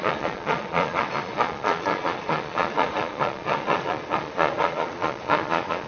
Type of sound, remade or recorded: remade